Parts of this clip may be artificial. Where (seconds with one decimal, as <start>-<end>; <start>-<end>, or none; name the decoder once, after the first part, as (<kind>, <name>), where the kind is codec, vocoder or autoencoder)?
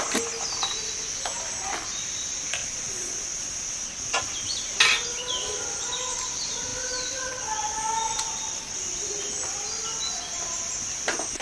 2.6-4.2 (vocoder, Vocos)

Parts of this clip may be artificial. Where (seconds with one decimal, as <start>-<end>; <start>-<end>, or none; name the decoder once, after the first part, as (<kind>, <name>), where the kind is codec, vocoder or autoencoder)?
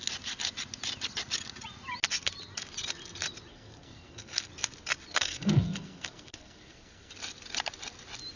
3.5-4.5 (codec, SNAC); 5.1-7.1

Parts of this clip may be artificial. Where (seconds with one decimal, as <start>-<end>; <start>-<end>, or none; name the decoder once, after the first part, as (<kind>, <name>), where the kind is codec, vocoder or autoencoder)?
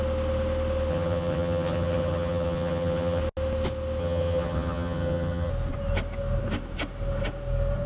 0.9-3.2 (vocoder, HiFi-GAN); 4.0-5.5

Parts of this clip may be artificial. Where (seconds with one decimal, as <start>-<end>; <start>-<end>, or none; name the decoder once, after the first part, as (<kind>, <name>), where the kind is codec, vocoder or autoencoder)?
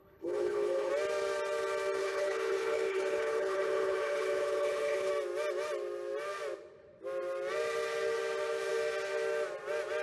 0.0-0.9 (codec, HILCodec); 2.0-5.1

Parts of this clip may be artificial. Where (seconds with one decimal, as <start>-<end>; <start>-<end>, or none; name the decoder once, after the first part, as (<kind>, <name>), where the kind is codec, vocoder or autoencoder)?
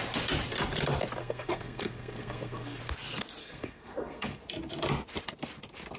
1.2-2.8 (codec, SNAC); 3.4-4.4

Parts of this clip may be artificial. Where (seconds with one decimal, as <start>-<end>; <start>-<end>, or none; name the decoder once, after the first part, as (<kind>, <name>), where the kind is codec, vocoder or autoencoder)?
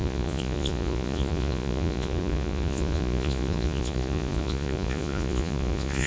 0.0-6.1 (vocoder, Vocos)